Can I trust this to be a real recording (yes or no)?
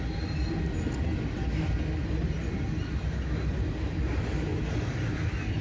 yes